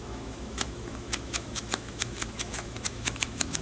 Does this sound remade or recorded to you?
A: remade